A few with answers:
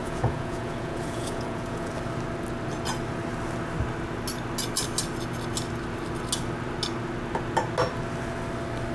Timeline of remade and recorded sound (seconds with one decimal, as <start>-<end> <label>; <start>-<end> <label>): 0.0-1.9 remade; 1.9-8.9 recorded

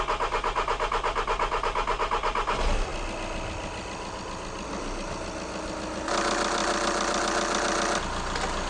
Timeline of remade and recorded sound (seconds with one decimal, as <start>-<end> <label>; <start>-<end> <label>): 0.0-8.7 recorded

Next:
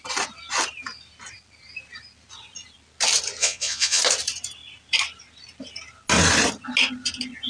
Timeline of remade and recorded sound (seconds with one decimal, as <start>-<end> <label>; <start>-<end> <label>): 0.0-3.4 recorded; 3.4-4.0 remade; 4.0-7.5 recorded

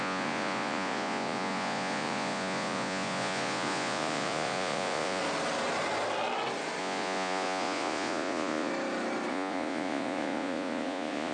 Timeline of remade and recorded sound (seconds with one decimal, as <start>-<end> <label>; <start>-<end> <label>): 0.0-5.2 remade; 5.2-6.8 recorded; 6.8-8.7 remade; 8.7-9.3 recorded; 9.3-11.3 remade

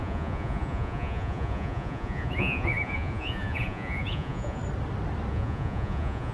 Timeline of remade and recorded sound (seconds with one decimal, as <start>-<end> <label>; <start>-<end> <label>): 0.0-4.6 remade; 4.6-5.3 recorded; 5.3-6.3 remade

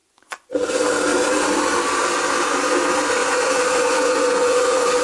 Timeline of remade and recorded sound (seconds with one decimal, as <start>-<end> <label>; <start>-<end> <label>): 0.0-0.7 remade; 0.7-3.2 recorded; 3.2-5.0 remade

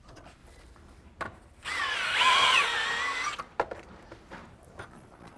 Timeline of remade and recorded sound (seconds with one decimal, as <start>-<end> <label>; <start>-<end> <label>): 0.0-0.4 remade; 0.4-1.8 recorded; 1.8-2.7 remade; 2.7-4.9 recorded; 4.9-5.4 remade

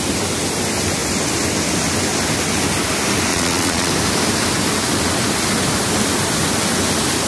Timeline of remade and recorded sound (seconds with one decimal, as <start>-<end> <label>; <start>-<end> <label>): 0.0-3.3 recorded; 3.3-3.9 remade; 3.9-7.3 recorded